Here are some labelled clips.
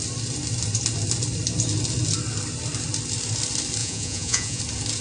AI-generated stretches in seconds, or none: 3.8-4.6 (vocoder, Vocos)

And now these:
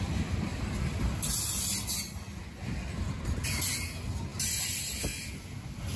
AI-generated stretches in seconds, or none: 0.5-2.4 (vocoder, BigVGAN v2); 4.3-5.0

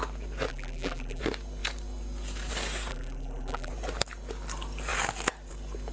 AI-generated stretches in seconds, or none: 0.5-1.2 (vocoder, BigVGAN v2); 2.9-3.7

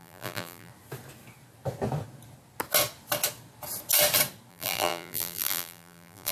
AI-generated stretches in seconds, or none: 0.0-0.7 (vocoder, BigVGAN v2); 4.5-6.3